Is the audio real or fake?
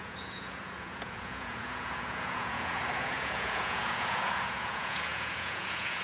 fake